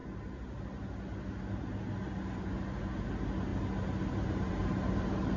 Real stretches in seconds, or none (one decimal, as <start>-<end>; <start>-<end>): 0.0-5.4